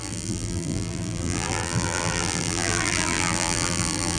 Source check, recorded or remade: remade